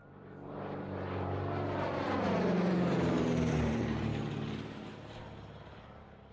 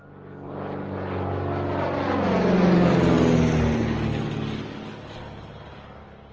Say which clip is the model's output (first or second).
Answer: first